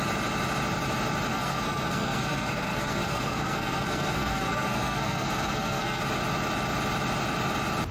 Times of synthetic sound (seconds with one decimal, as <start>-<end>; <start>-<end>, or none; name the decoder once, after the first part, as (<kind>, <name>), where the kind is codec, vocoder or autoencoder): 1.3-6.0 (codec, SNAC)

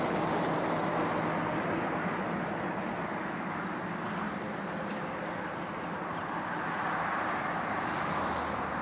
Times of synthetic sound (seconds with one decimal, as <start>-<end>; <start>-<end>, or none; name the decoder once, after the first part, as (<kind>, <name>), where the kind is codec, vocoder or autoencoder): 3.1-3.7 (vocoder, BigVGAN v2)

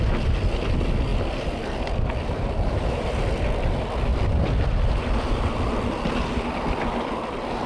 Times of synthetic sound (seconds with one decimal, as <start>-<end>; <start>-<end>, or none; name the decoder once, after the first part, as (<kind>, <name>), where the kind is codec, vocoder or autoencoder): 1.1-3.1 (vocoder, BigVGAN v2); 4.1-6.0

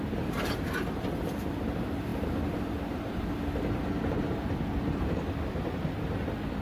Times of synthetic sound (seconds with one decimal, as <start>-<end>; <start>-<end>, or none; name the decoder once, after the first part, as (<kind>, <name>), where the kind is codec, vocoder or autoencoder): none

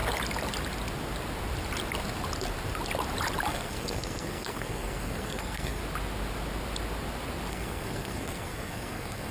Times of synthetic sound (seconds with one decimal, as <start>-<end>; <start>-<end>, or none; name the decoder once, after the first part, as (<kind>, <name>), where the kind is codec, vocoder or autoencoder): 3.5-5.8 (codec, SNAC); 7.5-9.3

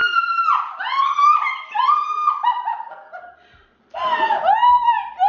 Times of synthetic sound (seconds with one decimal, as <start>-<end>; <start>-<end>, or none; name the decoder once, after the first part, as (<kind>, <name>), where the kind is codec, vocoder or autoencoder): none

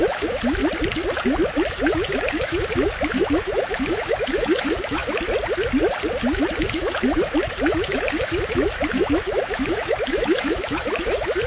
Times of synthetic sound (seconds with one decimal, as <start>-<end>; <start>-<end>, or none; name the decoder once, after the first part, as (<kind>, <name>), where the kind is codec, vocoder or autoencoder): 0.0-0.6 (autoencoder, DAC-VAE); 1.7-5.0; 6.2-11.5

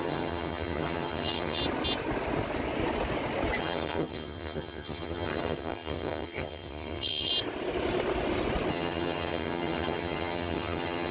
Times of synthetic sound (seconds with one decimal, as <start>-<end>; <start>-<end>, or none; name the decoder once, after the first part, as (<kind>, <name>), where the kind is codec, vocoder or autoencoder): 0.0-1.6 (vocoder, HiFi-GAN); 3.6-7.3; 8.7-11.1